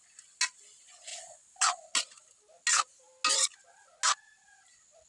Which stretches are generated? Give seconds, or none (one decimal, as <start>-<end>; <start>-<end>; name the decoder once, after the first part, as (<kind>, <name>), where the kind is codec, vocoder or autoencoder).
none